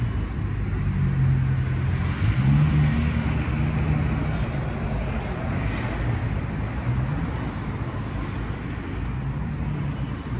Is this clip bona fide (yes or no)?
yes